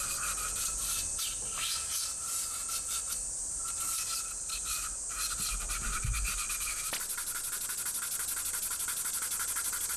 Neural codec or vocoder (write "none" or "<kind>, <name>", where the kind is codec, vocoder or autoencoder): none